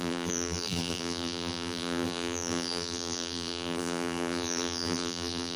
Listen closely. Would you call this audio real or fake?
fake